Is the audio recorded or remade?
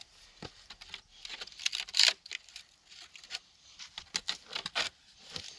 recorded